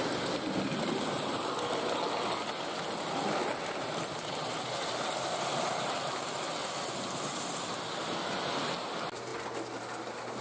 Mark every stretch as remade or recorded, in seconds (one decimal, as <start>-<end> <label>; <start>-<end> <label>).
0.0-10.4 recorded